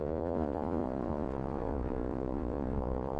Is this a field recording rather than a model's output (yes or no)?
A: no